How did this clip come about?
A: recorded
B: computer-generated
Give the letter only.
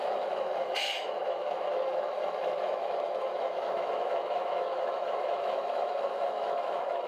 B